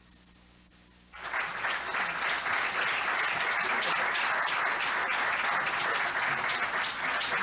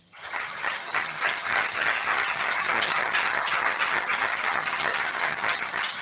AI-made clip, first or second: second